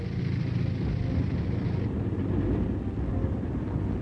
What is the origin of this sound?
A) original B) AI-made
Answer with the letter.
A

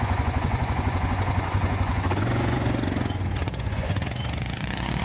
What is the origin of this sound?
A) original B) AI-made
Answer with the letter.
B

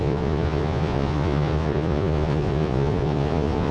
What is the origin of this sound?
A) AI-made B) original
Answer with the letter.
A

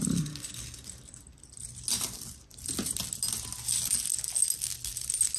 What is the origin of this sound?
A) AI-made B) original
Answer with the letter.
B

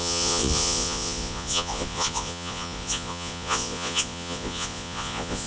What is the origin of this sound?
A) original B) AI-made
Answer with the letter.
B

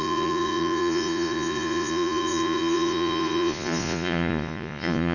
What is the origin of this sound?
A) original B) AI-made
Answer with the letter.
B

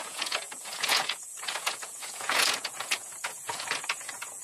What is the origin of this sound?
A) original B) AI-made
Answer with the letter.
B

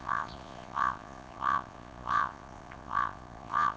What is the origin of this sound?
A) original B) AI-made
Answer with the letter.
B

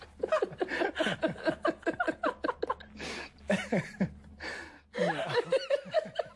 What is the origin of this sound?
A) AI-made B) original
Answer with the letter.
B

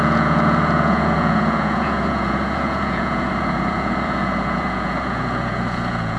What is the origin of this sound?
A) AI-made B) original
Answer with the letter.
A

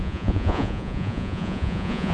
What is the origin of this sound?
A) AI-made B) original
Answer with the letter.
A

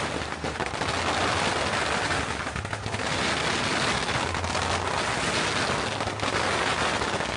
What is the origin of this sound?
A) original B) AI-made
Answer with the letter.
A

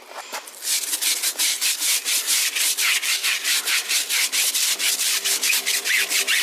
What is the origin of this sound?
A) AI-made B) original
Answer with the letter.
B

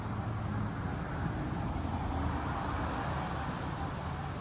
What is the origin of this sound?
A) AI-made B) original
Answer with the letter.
B